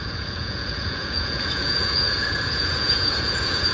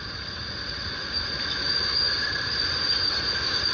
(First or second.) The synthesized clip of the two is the first